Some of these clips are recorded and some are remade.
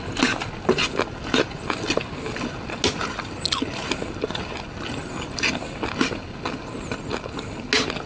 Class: recorded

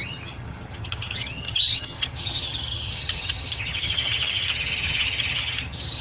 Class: remade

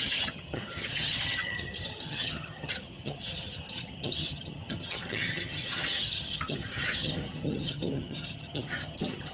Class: remade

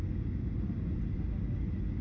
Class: recorded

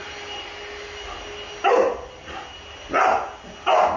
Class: recorded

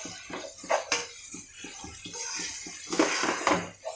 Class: recorded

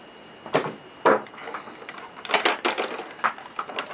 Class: recorded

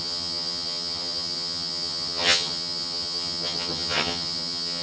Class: remade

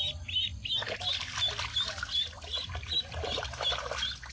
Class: recorded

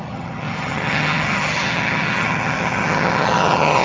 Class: remade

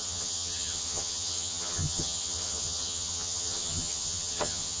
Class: remade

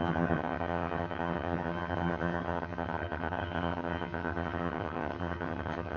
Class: remade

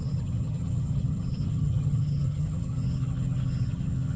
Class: remade